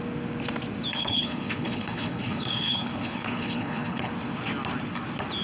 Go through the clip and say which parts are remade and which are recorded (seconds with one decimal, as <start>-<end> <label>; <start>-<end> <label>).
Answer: 0.0-0.9 recorded; 0.9-4.1 remade; 4.1-5.4 recorded